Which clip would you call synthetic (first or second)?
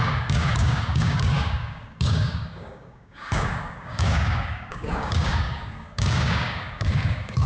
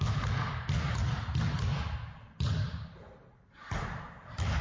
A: first